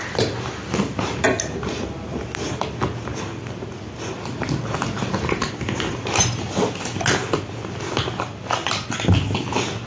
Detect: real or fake real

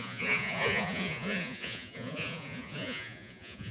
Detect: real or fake fake